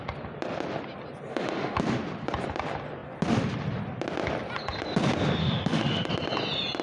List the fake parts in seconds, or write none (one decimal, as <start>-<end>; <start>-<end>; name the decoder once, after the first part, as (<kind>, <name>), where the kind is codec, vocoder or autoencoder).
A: 1.3-1.8 (autoencoder, DAC-VAE); 5.4-6.1